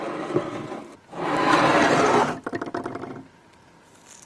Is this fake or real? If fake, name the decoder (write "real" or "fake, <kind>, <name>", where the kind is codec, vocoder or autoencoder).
real